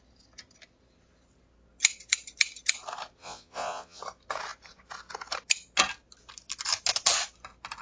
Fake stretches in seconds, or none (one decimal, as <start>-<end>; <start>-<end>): 3.2-4.0